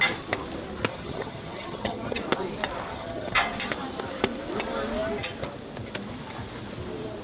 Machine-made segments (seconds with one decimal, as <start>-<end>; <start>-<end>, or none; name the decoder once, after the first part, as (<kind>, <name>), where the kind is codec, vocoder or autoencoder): 0.9-2.2 (vocoder, HiFi-GAN); 2.9-3.4